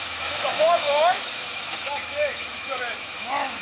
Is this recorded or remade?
remade